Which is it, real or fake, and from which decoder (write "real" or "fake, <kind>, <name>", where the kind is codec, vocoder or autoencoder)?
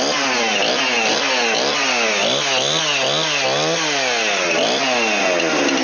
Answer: real